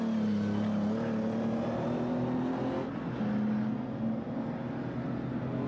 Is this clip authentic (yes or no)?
yes